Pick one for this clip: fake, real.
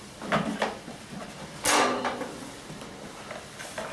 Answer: real